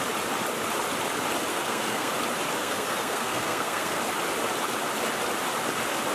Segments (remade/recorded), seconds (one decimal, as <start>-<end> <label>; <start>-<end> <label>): 0.0-1.5 recorded; 1.5-2.1 remade; 2.1-2.6 recorded; 2.6-4.0 remade; 4.0-6.1 recorded